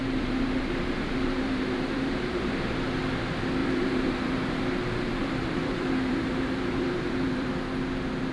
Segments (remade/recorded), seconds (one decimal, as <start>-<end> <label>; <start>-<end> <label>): 0.0-2.6 remade; 2.6-3.6 recorded; 3.6-4.6 remade; 4.6-5.2 recorded; 5.2-7.5 remade; 7.5-8.3 recorded